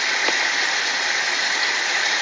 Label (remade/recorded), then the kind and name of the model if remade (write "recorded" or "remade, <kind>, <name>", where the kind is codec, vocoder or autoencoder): recorded